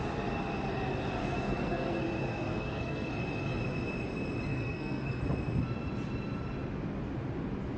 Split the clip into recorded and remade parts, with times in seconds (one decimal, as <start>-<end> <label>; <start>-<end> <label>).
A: 0.0-1.2 recorded; 1.2-2.0 remade; 2.0-2.5 recorded; 2.5-3.1 remade; 3.1-4.5 recorded; 4.5-5.2 remade; 5.2-7.8 recorded